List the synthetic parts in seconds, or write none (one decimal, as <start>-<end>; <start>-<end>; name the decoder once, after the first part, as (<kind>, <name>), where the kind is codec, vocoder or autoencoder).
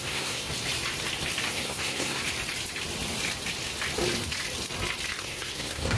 0.0-0.5 (codec, SNAC); 1.5-2.2; 5.2-6.0